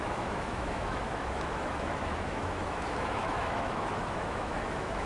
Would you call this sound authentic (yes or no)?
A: no